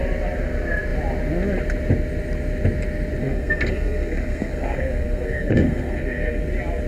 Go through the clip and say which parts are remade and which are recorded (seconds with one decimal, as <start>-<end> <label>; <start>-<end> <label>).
0.0-3.2 recorded; 3.2-6.4 remade; 6.4-6.9 recorded